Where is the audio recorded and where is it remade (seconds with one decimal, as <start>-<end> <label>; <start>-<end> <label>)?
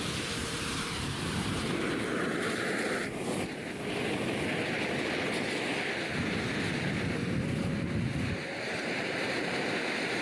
0.0-0.4 recorded; 0.4-1.7 remade; 1.7-8.4 recorded; 8.4-10.2 remade